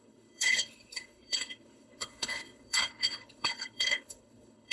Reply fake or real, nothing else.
fake